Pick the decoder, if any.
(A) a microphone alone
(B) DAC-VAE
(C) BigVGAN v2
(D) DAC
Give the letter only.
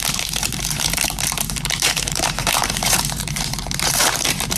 C